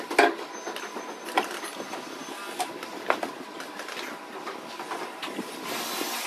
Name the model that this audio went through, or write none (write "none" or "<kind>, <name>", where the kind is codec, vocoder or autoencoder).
none